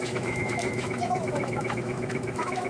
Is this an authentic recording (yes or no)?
no